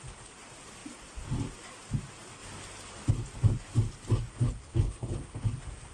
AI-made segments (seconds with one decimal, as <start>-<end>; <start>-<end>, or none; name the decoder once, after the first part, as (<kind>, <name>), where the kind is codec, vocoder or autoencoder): 4.6-5.5 (codec, HILCodec)